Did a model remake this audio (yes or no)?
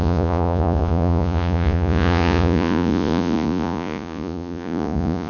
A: yes